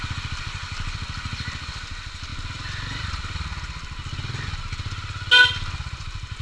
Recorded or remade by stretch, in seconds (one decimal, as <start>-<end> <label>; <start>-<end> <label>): 0.0-6.4 recorded